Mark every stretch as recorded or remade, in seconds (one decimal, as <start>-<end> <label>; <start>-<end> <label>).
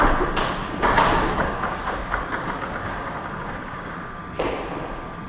0.0-1.0 recorded; 1.0-4.2 remade; 4.2-5.3 recorded